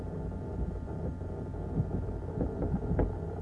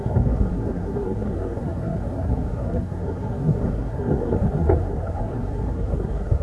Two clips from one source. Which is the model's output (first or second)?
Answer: second